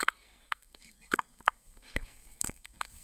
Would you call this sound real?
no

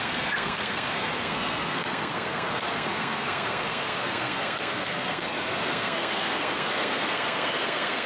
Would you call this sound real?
no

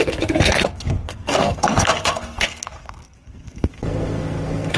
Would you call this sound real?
no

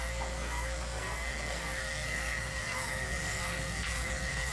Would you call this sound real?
no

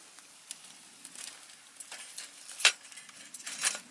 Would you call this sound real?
yes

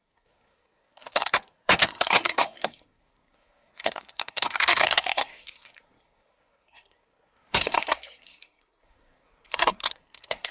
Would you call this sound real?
no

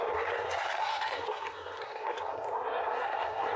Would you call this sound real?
no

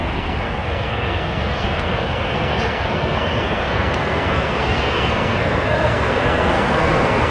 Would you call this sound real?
no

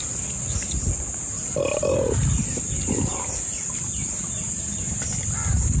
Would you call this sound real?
yes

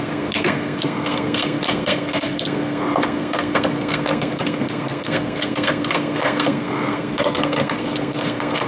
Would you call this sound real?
no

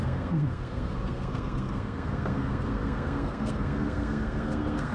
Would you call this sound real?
no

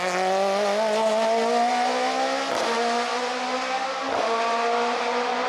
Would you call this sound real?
yes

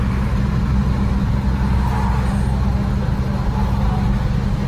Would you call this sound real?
yes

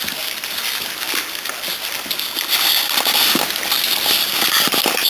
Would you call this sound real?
yes